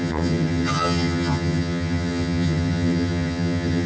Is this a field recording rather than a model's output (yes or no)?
no